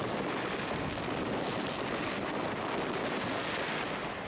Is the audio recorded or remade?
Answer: recorded